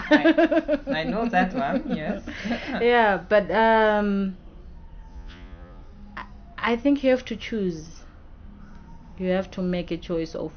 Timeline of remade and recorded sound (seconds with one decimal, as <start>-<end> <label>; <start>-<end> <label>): 0.0-5.1 recorded; 5.1-5.8 remade; 5.8-10.6 recorded